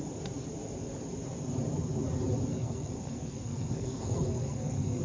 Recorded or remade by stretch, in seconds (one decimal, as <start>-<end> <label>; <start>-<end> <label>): 0.0-2.5 recorded; 2.5-5.0 remade